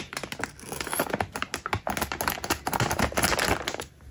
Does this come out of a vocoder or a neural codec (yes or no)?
no